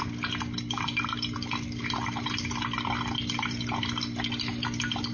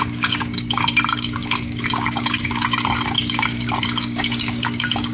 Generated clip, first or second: second